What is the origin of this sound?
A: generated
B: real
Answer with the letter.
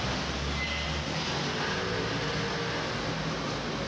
B